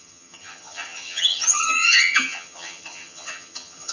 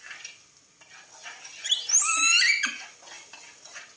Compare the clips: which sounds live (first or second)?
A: second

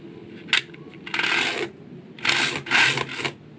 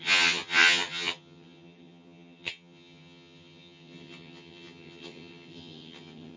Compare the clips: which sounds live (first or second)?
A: first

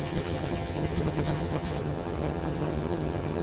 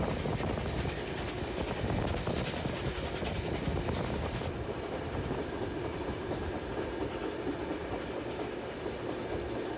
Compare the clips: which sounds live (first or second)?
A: second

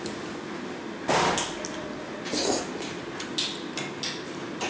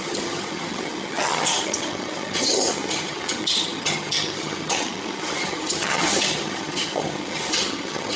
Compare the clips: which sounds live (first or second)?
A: first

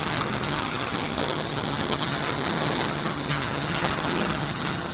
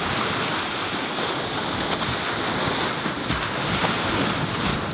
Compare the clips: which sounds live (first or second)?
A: second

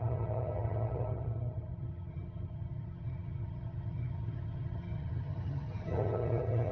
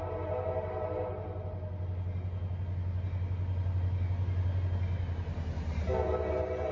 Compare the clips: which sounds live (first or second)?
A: second